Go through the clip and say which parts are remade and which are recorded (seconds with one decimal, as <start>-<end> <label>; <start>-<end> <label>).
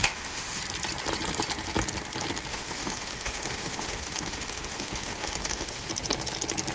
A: 0.0-0.6 remade; 0.6-2.5 recorded; 2.5-5.9 remade; 5.9-6.7 recorded